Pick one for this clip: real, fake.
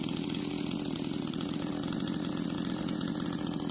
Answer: real